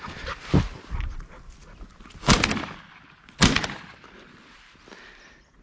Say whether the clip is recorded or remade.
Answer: recorded